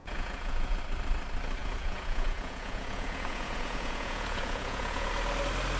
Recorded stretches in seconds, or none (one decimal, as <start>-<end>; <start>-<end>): 0.8-1.6; 5.1-5.8